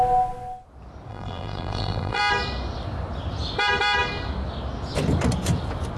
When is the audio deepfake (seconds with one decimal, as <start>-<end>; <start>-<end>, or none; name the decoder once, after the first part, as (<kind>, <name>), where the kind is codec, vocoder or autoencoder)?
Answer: 1.1-2.2 (vocoder, BigVGAN v2)